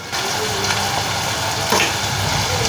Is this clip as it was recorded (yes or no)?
yes